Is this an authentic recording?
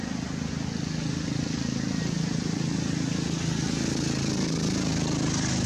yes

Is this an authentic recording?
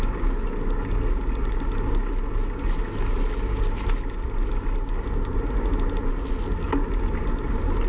yes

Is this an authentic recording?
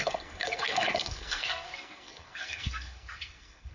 no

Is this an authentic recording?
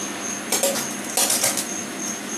yes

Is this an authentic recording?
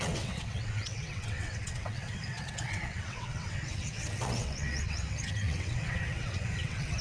no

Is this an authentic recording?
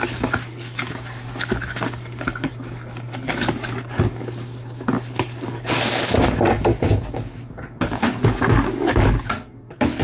no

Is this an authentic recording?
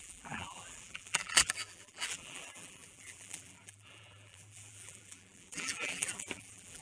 no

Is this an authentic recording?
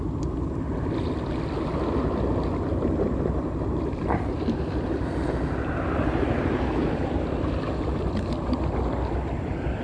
yes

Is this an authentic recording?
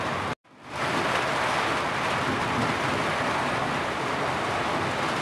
yes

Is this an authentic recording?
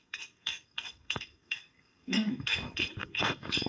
no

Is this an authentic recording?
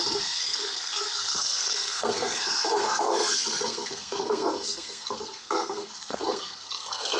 no